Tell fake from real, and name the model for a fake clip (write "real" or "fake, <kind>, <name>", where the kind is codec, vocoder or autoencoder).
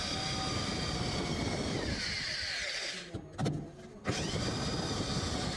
real